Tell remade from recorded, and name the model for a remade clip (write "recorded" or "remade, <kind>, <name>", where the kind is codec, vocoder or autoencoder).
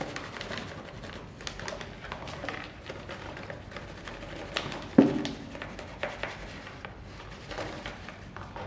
recorded